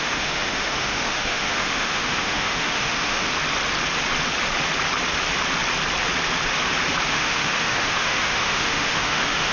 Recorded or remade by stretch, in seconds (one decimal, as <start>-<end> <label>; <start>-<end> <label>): 0.0-3.3 remade; 3.3-7.1 recorded; 7.1-9.5 remade